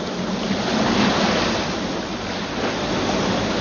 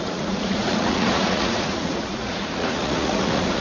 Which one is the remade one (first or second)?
second